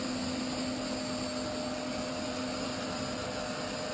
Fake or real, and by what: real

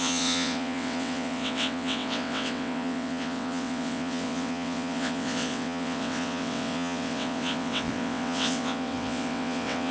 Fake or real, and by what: fake, vocoder, WaveNeXt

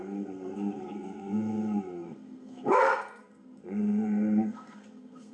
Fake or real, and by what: fake, codec, SNAC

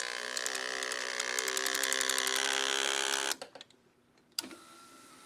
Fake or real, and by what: real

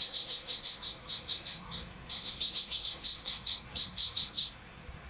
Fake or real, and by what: fake, codec, SNAC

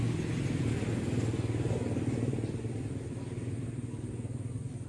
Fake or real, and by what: real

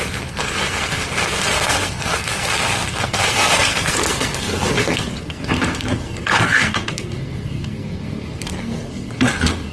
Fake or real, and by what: fake, codec, SNAC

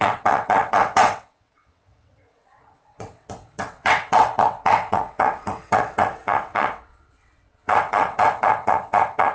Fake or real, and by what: fake, vocoder, WaveNeXt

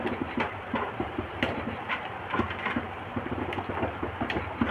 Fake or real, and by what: fake, vocoder, BigVGAN v2